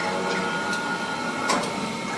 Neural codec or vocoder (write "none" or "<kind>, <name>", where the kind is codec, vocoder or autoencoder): none